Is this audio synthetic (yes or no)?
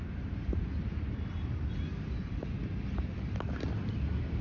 no